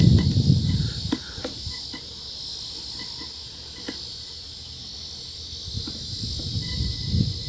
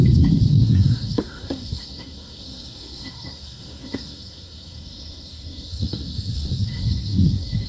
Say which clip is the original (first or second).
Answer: first